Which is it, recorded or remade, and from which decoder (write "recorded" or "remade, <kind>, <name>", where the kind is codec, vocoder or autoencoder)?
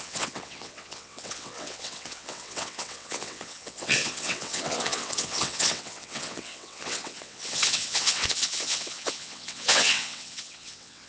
remade, vocoder, WaveNeXt